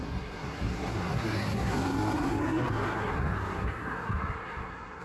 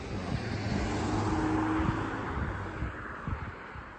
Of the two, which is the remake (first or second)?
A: first